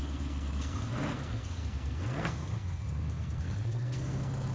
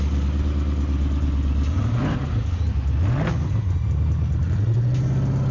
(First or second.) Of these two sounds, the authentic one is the second